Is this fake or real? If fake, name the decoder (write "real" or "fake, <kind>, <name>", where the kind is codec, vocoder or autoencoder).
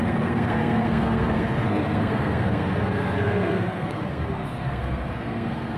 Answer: fake, codec, SNAC